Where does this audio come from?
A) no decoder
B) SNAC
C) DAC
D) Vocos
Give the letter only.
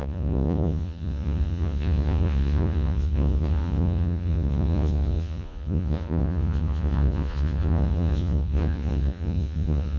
D